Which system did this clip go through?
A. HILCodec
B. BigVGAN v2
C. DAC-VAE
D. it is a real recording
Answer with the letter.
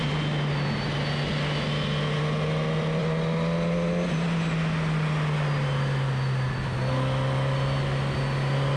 D